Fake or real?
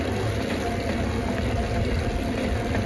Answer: real